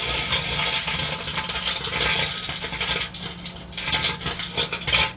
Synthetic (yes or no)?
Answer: no